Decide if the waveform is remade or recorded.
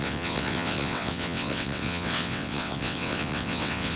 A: remade